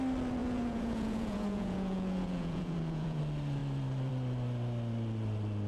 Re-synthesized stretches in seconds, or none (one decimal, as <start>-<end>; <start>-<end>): 0.4-3.2